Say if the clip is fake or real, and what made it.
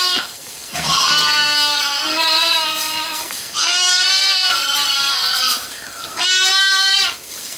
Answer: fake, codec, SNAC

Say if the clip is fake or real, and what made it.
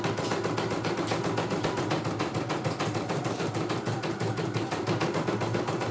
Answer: real